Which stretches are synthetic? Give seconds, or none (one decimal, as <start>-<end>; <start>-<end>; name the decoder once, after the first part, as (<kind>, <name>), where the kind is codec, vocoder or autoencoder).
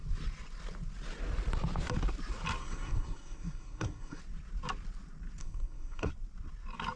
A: 2.6-4.2 (codec, SNAC); 5.4-6.1